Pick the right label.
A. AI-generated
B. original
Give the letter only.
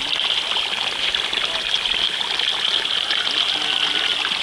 B